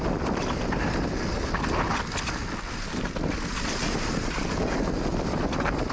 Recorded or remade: recorded